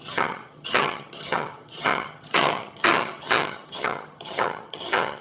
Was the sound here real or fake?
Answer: fake